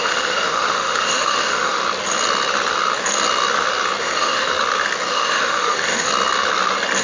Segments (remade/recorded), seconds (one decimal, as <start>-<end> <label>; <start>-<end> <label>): 0.0-1.8 remade; 1.8-4.0 recorded; 4.0-4.5 remade; 4.5-5.1 recorded; 5.1-6.1 remade; 6.1-7.0 recorded